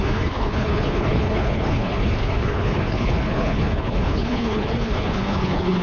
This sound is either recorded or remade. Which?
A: remade